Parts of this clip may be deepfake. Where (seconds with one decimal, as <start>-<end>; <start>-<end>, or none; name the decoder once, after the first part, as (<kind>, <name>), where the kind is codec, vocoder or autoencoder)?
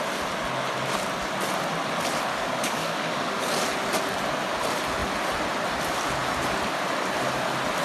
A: 2.3-3.4 (codec, DAC)